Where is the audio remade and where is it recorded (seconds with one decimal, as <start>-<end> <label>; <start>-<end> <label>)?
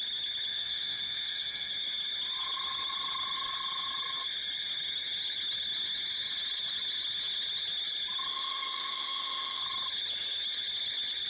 0.0-0.5 recorded; 0.5-1.7 remade; 1.7-8.3 recorded; 8.3-9.6 remade; 9.6-11.3 recorded